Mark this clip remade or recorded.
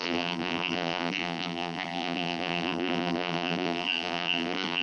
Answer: remade